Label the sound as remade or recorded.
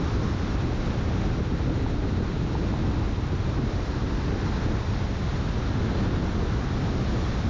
recorded